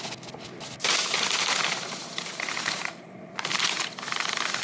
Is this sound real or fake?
real